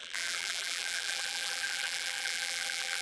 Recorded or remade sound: remade